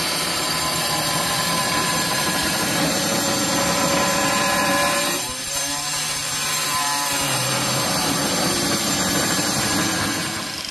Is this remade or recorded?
remade